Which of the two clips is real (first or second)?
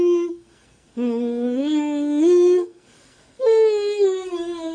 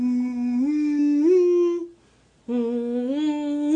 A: second